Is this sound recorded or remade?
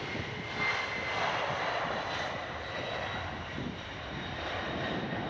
recorded